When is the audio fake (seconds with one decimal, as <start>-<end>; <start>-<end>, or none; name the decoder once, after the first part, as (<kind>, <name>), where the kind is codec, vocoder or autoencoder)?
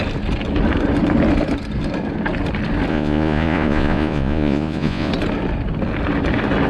2.9-5.1 (vocoder, Vocos)